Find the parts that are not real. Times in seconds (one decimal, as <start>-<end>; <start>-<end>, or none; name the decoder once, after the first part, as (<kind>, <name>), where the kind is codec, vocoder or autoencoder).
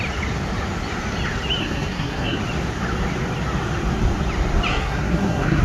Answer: 1.6-2.4 (codec, SNAC); 4.7-5.6